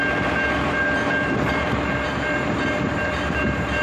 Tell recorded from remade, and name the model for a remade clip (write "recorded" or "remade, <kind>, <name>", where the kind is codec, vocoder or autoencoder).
remade, vocoder, BigVGAN v2